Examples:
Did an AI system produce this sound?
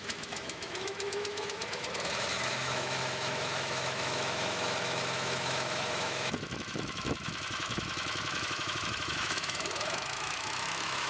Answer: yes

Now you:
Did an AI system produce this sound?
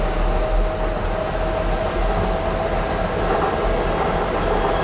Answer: no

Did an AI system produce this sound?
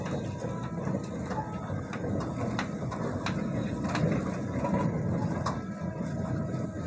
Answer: no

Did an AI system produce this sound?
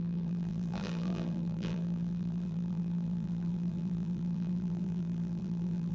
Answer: yes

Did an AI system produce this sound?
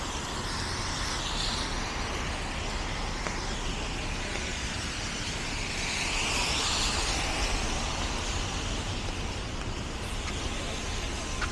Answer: no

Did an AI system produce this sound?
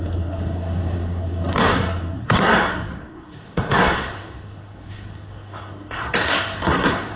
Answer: yes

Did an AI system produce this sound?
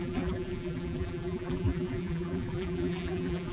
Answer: yes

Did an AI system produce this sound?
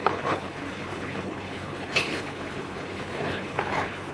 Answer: yes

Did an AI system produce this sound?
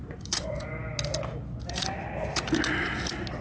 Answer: no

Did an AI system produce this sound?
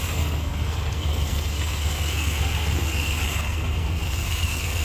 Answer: yes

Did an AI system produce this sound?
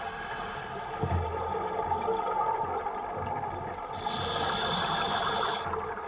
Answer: no